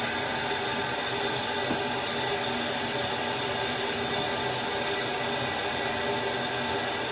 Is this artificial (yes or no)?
no